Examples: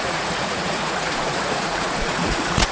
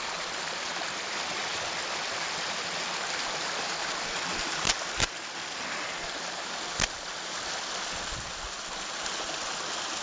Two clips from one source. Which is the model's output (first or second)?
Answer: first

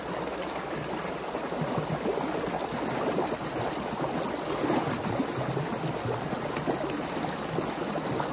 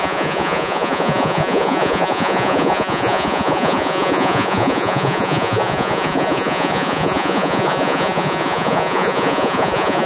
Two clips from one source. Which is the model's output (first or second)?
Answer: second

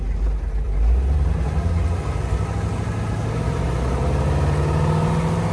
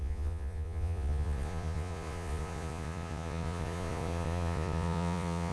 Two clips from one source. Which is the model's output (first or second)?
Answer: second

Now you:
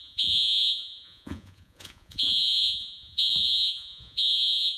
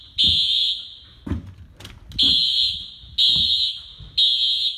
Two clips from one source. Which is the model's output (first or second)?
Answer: first